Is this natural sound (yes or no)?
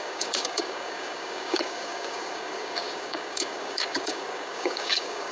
no